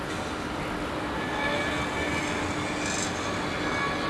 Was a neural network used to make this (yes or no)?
no